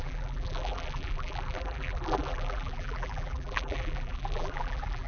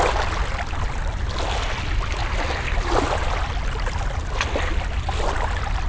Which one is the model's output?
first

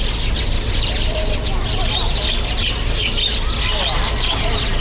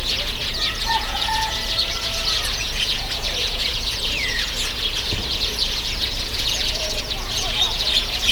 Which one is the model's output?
second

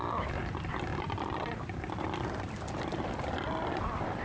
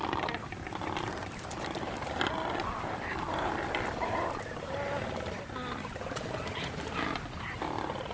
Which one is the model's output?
second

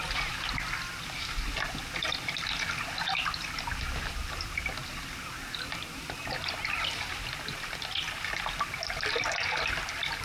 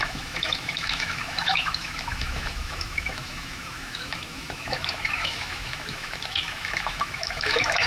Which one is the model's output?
second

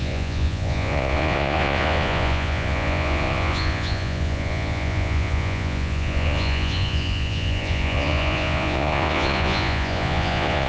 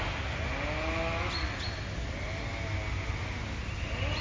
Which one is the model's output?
first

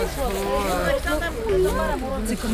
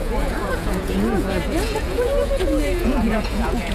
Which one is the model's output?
second